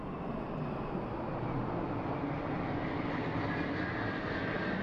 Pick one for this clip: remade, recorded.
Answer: recorded